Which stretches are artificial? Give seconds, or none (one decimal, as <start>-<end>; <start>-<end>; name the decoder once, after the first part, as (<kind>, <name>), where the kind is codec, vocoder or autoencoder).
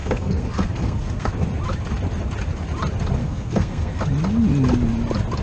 0.0-1.3 (codec, SNAC); 3.2-4.0